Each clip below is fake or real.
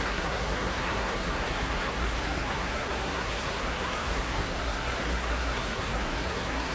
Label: fake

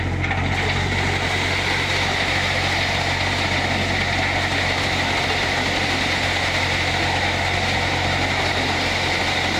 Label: real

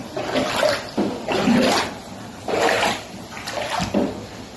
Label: fake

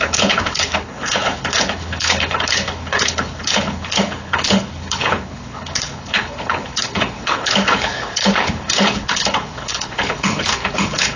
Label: fake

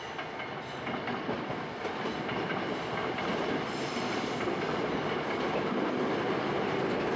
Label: real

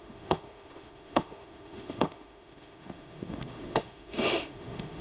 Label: fake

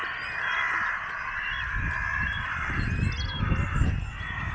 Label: real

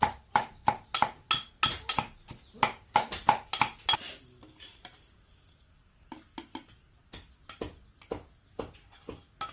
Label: real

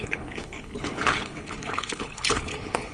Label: fake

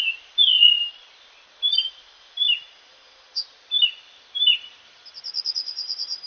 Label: fake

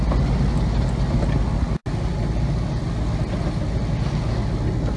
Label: real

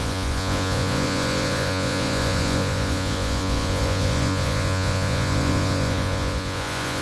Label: fake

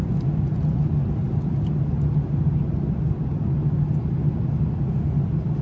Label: real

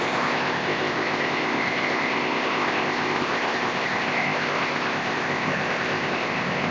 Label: fake